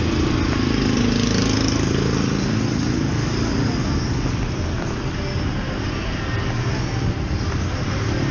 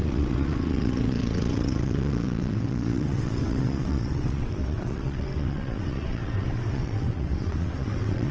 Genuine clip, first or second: first